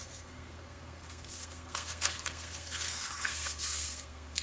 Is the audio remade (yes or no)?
yes